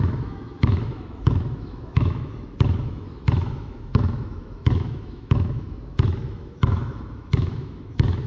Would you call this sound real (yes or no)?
no